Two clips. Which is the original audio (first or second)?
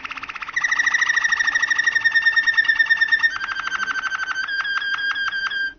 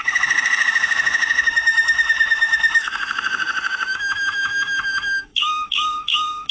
first